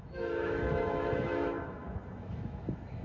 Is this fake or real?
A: fake